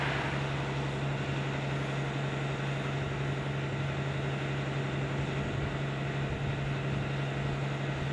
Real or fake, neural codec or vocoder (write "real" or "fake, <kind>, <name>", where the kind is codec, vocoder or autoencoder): real